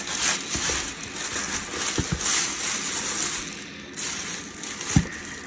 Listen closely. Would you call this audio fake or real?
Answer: real